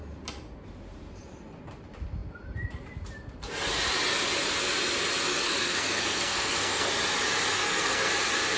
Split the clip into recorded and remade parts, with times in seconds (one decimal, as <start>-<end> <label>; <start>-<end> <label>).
0.0-5.3 recorded; 5.3-6.9 remade; 6.9-7.5 recorded; 7.5-8.1 remade; 8.1-8.6 recorded